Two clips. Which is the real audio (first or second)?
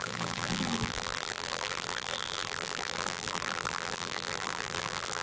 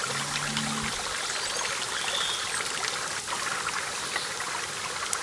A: second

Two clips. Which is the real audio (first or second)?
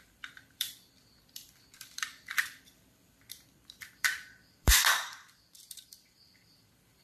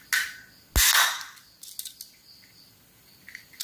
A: second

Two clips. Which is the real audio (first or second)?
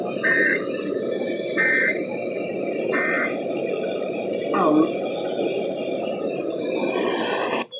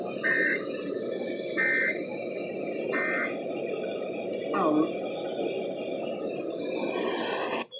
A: second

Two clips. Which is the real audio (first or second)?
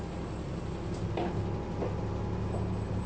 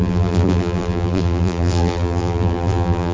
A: first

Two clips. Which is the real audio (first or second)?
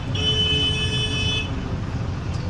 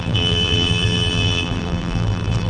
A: first